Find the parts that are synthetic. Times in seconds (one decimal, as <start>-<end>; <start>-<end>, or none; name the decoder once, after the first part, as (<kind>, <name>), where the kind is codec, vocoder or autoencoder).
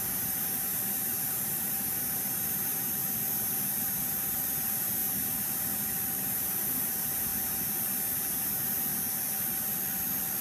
0.0-0.7 (vocoder, BigVGAN v2); 1.3-3.0; 3.7-5.0; 6.1-7.3